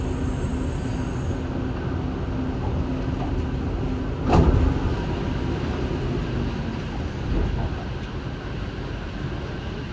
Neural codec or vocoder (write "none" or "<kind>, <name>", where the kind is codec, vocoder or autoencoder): none